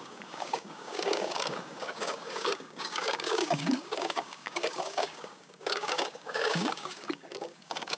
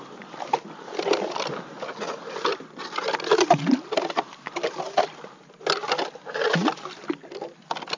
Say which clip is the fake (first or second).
first